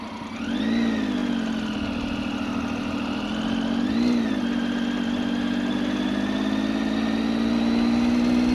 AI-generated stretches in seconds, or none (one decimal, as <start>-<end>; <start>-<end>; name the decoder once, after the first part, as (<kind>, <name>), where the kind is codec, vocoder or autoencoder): none